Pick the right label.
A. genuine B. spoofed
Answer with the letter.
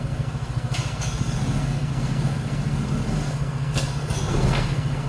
B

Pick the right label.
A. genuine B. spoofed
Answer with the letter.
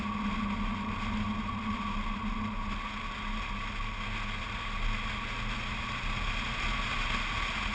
A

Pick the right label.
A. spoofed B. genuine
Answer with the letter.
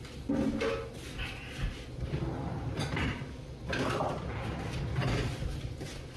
B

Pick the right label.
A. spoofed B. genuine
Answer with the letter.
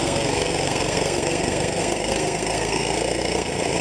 A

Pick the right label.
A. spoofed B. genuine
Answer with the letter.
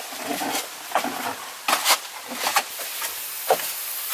B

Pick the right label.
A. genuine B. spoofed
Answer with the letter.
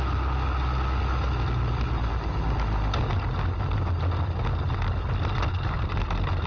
A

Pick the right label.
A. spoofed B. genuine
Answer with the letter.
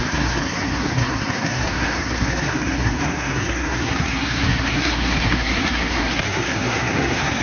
A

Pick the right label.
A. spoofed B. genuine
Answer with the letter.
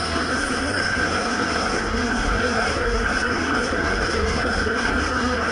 A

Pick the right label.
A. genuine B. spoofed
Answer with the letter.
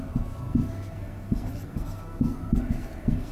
B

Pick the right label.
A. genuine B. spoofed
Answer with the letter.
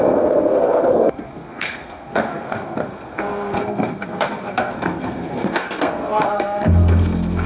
B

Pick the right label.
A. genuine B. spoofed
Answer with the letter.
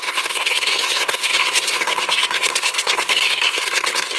B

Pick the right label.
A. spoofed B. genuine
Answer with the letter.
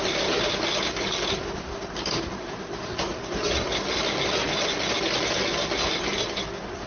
B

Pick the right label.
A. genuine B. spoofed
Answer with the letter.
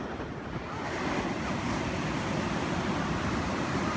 A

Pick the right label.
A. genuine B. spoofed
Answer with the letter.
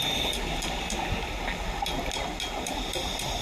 A